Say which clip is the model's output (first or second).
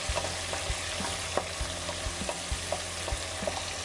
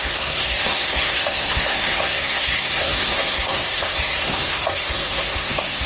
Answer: second